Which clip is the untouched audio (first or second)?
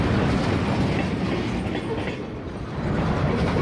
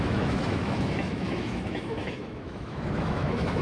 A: first